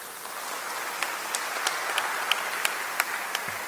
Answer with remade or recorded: recorded